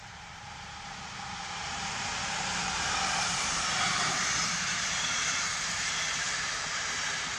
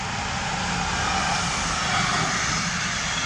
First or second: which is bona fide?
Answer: second